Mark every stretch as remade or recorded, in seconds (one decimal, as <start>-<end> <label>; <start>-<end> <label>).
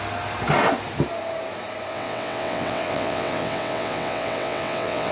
0.0-1.9 recorded; 1.9-5.1 remade